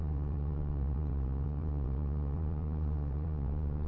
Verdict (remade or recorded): remade